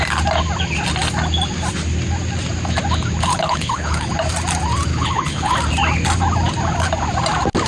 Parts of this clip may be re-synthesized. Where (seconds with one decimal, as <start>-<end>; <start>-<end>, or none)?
3.3-4.1; 4.9-5.5